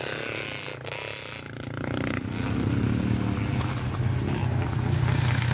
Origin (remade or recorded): recorded